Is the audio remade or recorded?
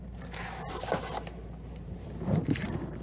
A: remade